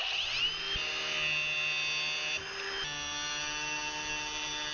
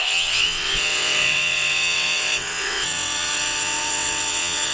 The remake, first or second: second